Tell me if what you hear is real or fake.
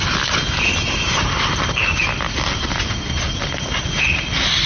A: real